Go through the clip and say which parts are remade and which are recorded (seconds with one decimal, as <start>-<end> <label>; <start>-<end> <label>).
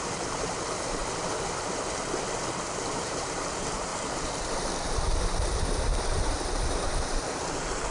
0.0-1.0 remade; 1.0-3.0 recorded; 3.0-3.9 remade; 3.9-6.3 recorded; 6.3-7.9 remade